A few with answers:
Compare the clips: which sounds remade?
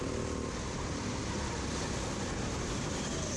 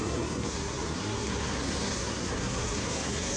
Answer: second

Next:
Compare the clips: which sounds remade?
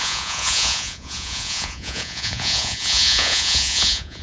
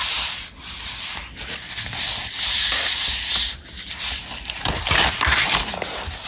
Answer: first